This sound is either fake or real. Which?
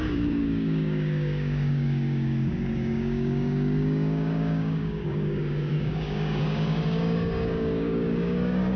fake